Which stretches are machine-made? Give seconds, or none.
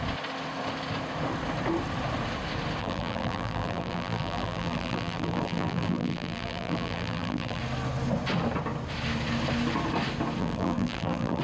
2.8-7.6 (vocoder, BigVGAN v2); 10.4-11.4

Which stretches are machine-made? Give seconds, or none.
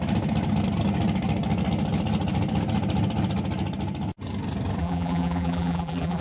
4.8-6.2 (vocoder, BigVGAN v2)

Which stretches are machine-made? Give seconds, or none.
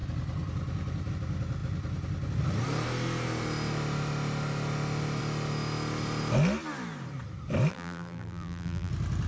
7.7-8.9 (vocoder, BigVGAN v2)